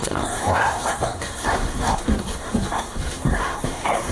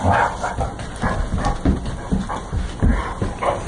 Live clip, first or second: second